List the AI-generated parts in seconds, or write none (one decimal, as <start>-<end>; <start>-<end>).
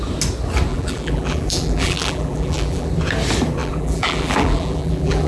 0.7-2.9; 3.6-5.3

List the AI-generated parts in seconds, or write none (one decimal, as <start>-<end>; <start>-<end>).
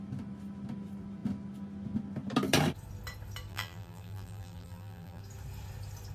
3.5-5.2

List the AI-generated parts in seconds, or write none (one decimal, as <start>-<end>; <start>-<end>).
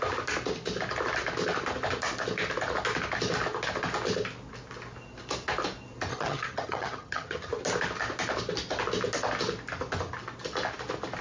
6.1-7.5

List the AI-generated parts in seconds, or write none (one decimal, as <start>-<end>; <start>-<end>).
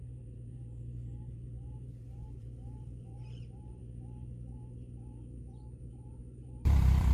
0.0-3.8; 5.9-7.1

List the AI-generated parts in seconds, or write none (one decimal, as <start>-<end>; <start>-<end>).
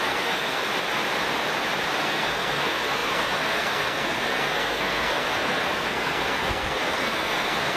0.0-0.7; 2.0-7.8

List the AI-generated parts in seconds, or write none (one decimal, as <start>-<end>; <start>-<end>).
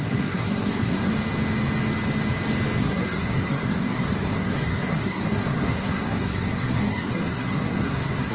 0.0-1.1; 2.8-8.3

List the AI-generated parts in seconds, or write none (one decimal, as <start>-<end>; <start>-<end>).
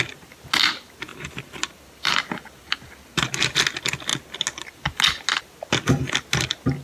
1.1-3.3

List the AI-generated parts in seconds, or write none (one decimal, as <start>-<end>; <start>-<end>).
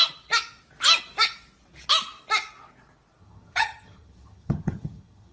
3.2-5.3